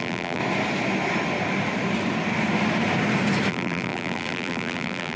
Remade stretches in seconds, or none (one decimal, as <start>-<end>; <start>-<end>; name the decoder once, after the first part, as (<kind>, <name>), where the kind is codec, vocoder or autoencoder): 0.0-0.4 (vocoder, BigVGAN v2); 3.5-5.2